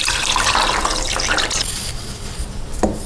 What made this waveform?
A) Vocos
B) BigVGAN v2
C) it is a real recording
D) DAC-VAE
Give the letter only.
C